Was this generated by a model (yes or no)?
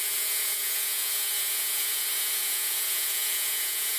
yes